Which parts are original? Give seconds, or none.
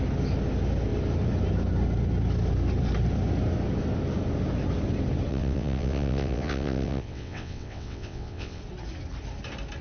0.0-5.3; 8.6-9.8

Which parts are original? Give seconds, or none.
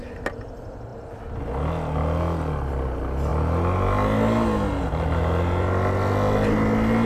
0.0-7.1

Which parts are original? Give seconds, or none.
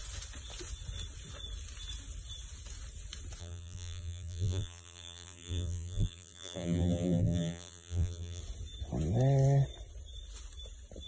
0.0-3.4; 8.4-11.1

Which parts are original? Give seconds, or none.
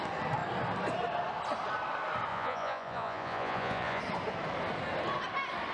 0.0-2.3; 4.0-5.7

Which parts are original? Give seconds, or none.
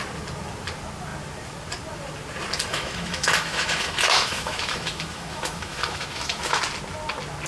0.0-2.7; 6.6-7.5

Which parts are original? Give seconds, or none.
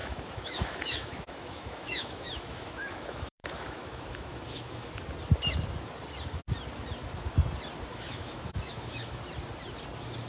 4.9-7.9; 9.2-10.3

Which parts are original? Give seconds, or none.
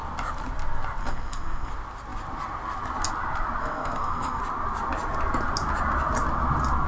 0.0-1.0; 1.7-3.6; 4.4-6.9